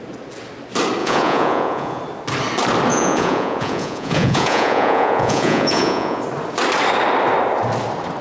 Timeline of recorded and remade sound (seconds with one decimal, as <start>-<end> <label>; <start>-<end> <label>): 0.0-1.0 recorded; 1.0-2.0 remade; 2.0-2.9 recorded; 2.9-6.2 remade; 6.2-8.2 recorded